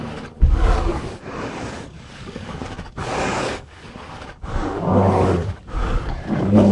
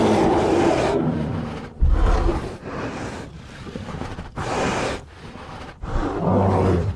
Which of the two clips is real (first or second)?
second